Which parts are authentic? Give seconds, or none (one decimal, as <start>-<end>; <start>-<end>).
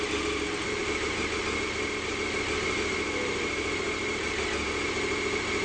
0.0-5.6